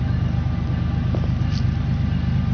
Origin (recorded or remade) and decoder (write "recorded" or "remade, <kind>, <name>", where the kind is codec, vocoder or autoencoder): recorded